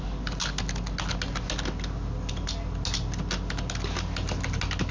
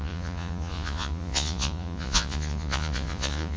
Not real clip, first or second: second